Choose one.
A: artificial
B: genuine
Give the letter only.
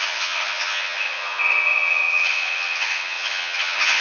A